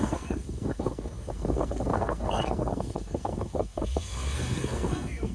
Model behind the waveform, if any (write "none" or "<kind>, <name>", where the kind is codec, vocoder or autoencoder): codec, SNAC